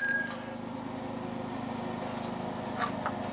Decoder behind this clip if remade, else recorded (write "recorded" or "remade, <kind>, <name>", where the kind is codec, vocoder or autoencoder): recorded